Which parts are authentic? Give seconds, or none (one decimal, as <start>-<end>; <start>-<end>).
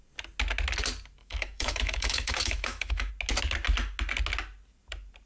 0.0-1.2; 3.1-5.3